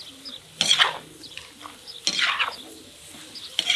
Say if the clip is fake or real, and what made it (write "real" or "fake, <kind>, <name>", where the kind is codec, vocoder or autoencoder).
real